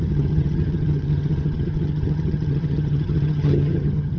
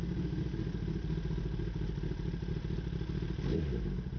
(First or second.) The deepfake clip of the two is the first